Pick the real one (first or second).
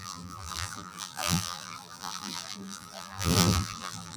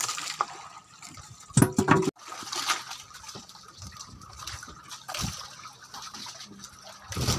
second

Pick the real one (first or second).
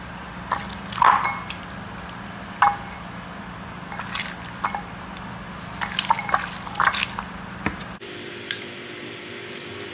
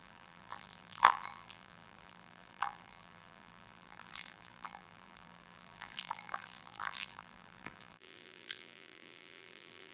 first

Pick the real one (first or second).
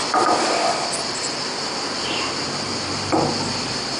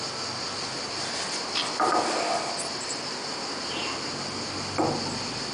second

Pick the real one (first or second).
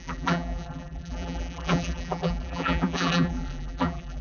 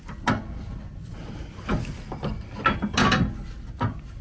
second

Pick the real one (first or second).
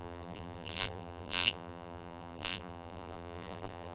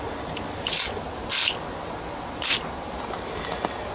second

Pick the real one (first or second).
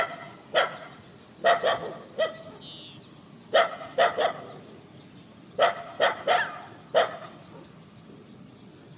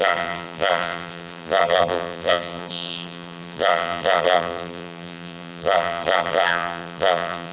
first